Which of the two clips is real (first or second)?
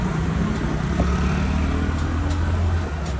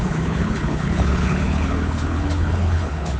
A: first